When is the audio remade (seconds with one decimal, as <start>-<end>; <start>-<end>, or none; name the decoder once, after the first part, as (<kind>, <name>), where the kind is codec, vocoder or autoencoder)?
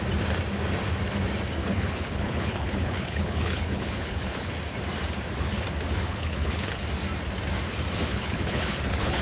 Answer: 1.6-4.5 (codec, HILCodec); 6.0-6.8; 8.1-9.2